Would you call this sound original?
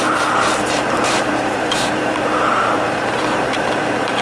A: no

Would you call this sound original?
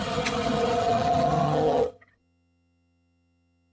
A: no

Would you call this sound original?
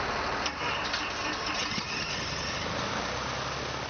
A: yes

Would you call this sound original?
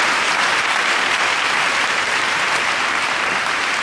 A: no